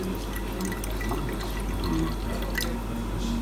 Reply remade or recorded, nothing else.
recorded